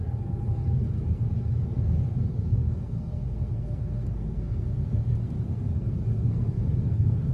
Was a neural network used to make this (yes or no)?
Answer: yes